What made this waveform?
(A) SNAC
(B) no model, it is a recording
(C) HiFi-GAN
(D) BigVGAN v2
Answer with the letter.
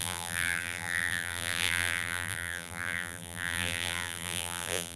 D